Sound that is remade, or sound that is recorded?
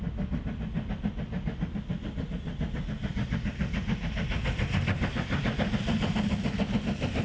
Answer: recorded